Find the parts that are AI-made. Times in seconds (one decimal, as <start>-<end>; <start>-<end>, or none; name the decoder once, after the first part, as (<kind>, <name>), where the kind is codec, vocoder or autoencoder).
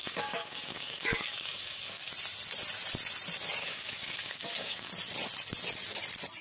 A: 0.0-2.1 (codec, DAC); 3.6-4.9